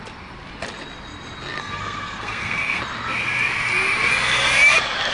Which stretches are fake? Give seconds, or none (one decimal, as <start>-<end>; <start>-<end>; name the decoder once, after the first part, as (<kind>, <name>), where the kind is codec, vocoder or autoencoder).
1.6-2.8 (codec, SNAC)